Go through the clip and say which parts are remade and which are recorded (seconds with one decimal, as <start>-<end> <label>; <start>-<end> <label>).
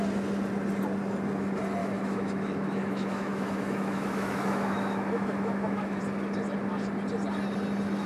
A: 0.0-1.8 recorded; 1.8-6.0 remade; 6.0-8.1 recorded